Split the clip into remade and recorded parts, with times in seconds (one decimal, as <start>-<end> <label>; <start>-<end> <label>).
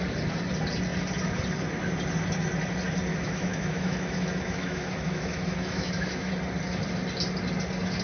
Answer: 0.0-3.1 recorded; 3.1-6.3 remade; 6.3-8.0 recorded